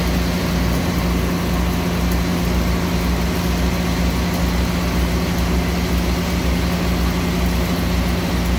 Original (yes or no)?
yes